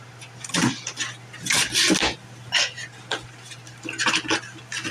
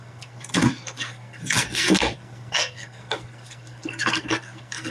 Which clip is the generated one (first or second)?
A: second